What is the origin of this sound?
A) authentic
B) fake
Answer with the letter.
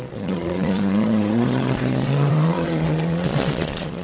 B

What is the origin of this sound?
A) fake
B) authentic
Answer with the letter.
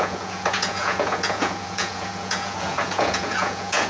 A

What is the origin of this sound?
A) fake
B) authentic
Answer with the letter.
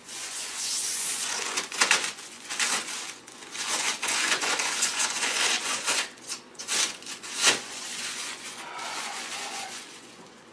A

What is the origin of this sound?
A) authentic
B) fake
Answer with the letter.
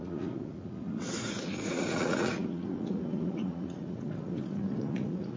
B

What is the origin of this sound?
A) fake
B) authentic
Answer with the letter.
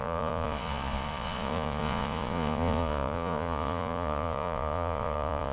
A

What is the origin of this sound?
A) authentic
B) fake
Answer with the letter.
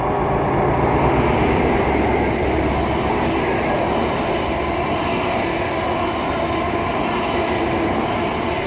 A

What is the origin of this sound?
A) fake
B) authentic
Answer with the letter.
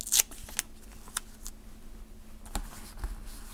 B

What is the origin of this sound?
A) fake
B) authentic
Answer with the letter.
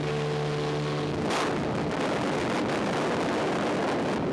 B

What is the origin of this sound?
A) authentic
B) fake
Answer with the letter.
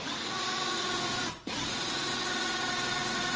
B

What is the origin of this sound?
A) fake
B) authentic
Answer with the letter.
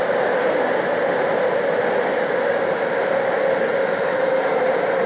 B